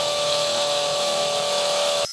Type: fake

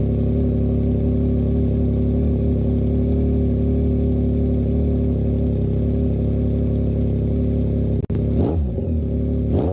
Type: real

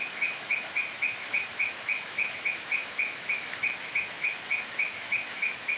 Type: fake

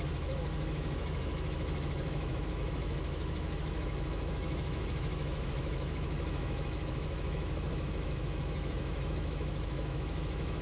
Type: fake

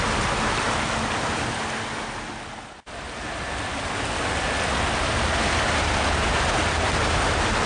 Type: real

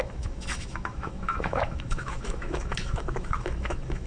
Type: fake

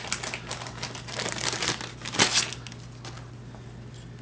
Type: real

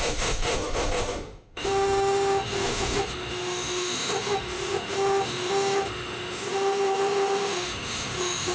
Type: fake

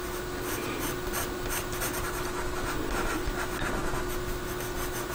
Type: real